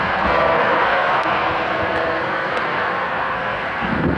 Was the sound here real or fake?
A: fake